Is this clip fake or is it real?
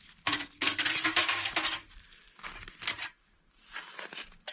real